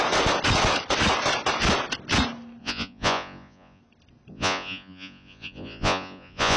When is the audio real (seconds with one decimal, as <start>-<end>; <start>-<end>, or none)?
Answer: 0.0-2.6; 3.8-4.3